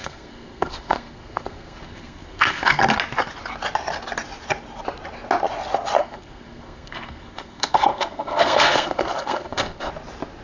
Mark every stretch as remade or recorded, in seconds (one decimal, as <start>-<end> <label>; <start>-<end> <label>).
0.0-2.8 remade; 2.8-6.0 recorded; 6.0-9.9 remade; 9.9-10.4 recorded